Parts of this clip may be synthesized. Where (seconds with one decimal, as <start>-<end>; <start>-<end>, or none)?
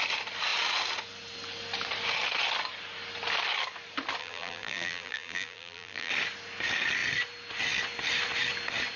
4.2-6.1